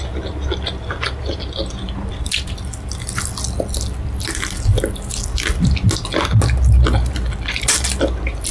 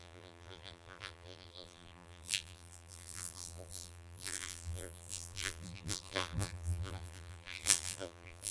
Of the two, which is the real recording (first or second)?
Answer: first